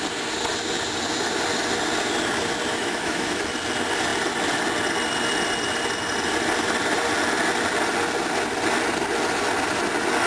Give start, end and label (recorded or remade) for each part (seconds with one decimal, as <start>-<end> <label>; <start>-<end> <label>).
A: 0.0-2.7 recorded; 2.7-3.4 remade; 3.4-10.3 recorded